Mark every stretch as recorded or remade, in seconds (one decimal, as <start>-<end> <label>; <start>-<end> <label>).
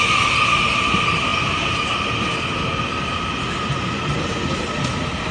0.0-5.3 recorded